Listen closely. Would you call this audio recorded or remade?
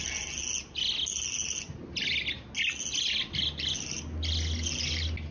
recorded